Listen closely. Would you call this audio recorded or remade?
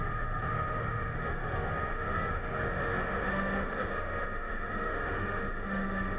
remade